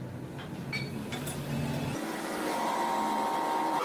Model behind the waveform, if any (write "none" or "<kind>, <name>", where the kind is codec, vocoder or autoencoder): none